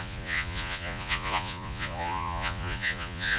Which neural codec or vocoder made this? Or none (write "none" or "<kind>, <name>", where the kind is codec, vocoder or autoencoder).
vocoder, Vocos